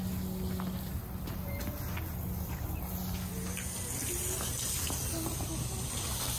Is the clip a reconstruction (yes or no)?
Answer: no